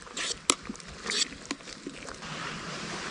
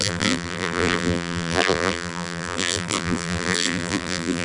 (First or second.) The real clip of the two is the first